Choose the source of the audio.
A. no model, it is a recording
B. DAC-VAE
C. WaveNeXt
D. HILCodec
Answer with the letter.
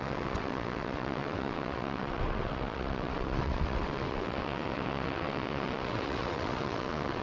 C